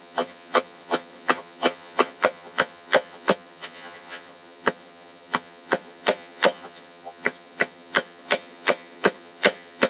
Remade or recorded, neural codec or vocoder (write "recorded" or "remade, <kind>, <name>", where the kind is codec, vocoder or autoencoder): remade, vocoder, HiFi-GAN